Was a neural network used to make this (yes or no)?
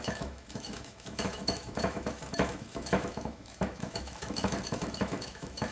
yes